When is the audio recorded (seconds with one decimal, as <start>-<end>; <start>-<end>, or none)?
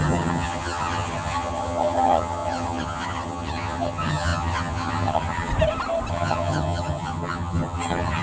5.5-6.1